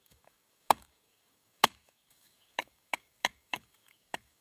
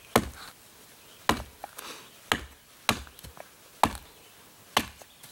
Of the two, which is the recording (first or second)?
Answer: second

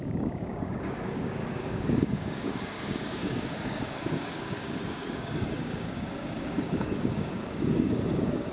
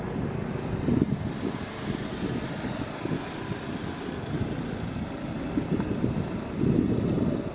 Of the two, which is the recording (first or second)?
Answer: second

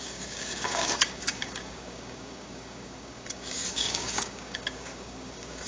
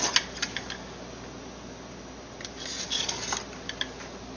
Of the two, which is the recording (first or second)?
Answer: second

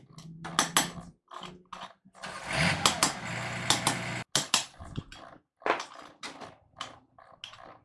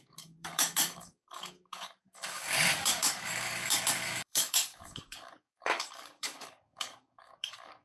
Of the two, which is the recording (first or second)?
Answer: first